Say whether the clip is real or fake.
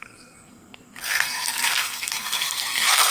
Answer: fake